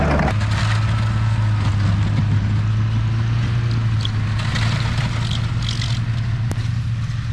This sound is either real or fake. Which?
real